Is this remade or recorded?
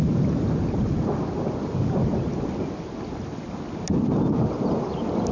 recorded